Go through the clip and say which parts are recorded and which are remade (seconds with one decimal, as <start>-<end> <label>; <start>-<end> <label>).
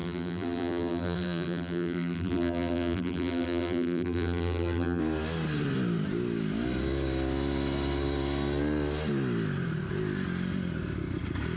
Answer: 0.0-5.0 remade; 5.0-11.6 recorded